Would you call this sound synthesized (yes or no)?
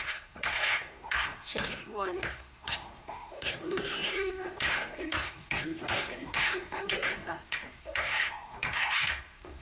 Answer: yes